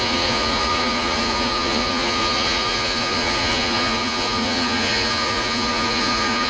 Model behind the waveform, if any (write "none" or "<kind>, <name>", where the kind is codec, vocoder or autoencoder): vocoder, Vocos